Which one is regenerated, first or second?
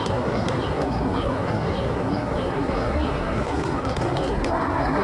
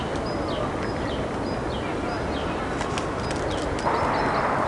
first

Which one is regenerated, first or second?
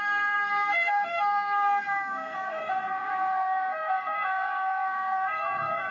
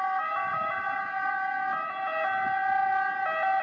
first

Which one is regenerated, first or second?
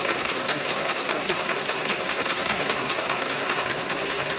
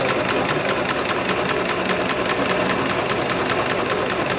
first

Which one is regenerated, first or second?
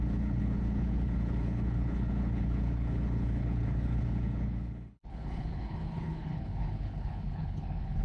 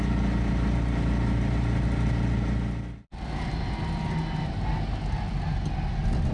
first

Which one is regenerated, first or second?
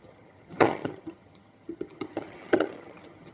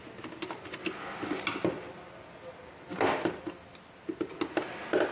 first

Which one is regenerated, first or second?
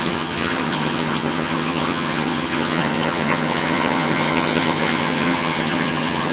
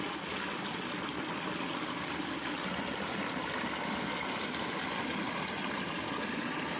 first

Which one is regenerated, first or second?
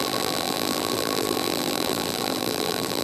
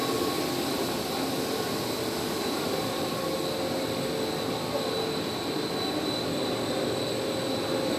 first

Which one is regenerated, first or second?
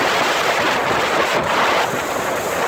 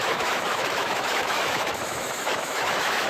second